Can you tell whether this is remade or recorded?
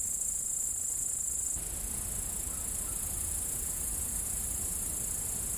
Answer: recorded